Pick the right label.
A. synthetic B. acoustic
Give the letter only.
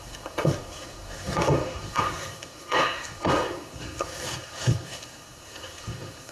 A